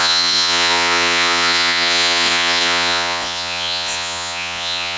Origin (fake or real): fake